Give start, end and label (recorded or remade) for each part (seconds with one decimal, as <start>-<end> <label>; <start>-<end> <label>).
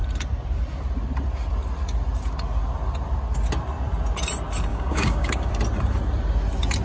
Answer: 0.0-4.7 recorded; 4.7-5.5 remade; 5.5-6.8 recorded